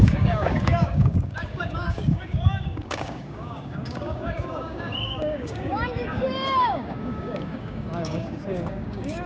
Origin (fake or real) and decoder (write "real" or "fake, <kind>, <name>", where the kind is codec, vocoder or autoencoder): fake, codec, DAC